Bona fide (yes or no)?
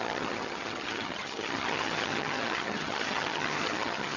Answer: no